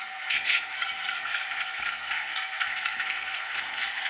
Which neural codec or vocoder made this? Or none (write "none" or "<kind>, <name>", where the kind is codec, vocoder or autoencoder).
codec, SNAC